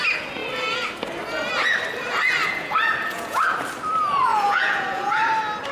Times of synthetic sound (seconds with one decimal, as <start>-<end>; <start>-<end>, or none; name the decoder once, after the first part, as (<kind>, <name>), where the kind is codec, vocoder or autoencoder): 2.4-3.4 (vocoder, Vocos); 4.3-5.3